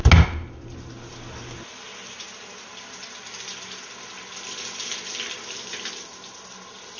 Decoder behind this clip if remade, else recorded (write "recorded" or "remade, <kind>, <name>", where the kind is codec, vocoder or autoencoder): recorded